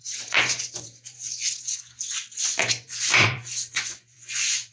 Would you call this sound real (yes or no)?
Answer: no